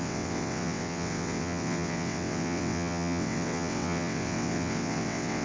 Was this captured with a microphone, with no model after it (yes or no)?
no